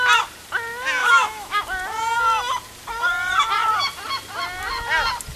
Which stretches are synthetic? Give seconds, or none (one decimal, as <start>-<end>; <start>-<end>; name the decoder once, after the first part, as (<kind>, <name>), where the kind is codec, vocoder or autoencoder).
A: 1.0-1.6 (autoencoder, DAC-VAE)